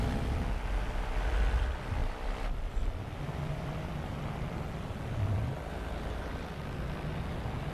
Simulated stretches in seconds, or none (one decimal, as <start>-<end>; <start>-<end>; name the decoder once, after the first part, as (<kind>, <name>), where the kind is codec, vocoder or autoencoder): 2.0-5.0 (vocoder, BigVGAN v2)